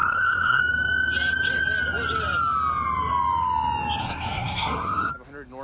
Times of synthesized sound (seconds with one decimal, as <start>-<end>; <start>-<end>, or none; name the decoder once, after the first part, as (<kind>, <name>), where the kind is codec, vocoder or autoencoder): 0.0-0.6 (codec, SNAC); 4.0-5.1